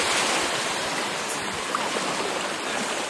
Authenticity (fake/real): real